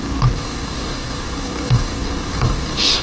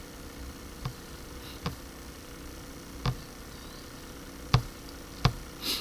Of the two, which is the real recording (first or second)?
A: second